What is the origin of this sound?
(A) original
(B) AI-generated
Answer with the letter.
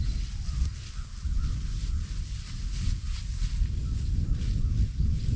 A